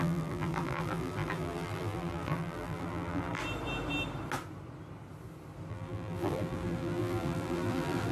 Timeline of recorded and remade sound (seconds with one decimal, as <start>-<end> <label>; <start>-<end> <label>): 0.0-3.4 remade; 3.4-5.7 recorded; 5.7-8.1 remade